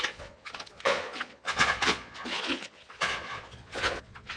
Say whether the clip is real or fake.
fake